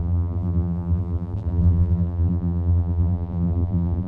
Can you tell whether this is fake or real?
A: fake